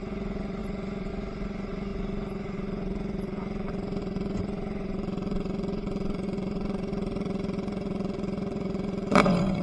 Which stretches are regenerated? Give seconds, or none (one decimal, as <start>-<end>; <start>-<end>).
0.0-9.6